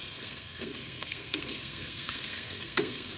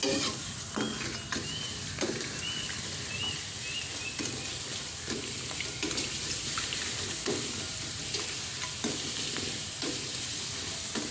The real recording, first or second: second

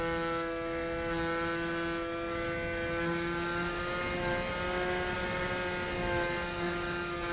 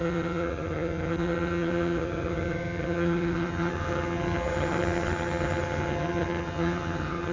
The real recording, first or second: first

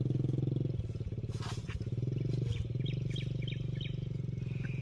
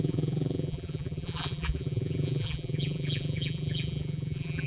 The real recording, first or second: first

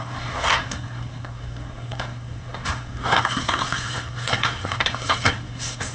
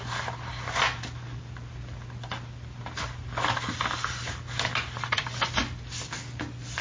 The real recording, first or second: second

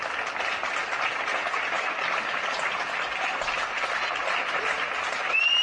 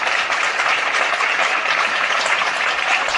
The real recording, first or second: first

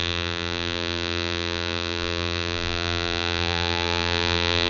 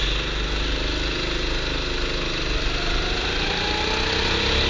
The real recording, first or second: second